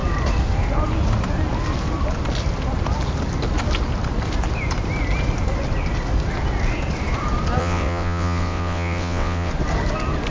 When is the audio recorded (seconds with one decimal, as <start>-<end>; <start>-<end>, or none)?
0.0-7.6; 9.5-10.3